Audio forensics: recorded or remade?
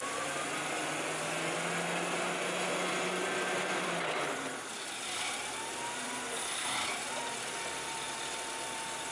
recorded